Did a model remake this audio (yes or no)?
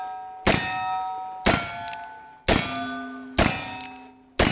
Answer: no